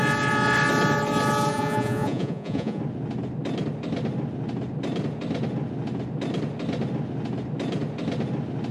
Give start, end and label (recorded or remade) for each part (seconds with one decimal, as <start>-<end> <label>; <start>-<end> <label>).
0.0-1.5 recorded; 1.5-2.8 remade; 2.8-8.7 recorded